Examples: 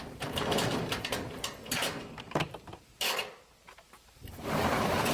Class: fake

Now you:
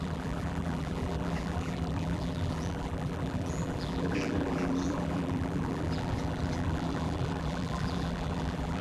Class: fake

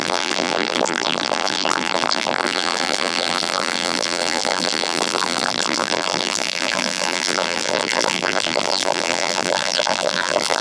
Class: fake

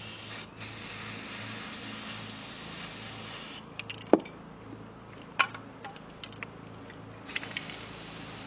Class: real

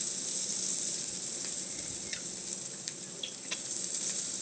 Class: fake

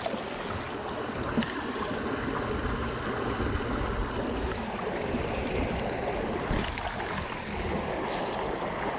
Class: real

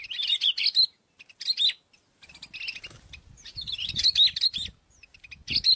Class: real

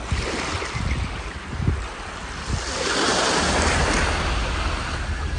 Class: real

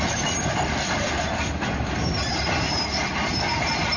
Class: fake